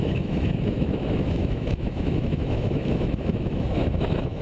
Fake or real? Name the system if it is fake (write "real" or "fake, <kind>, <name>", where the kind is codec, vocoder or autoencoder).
fake, autoencoder, DAC-VAE